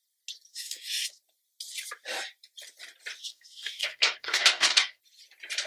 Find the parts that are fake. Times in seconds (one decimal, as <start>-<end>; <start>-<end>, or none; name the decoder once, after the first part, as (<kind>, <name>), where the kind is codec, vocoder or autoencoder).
0.5-1.2 (codec, DAC); 3.2-5.0